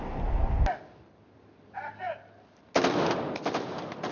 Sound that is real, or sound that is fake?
real